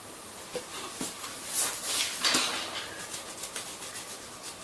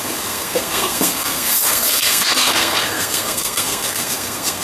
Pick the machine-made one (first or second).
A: second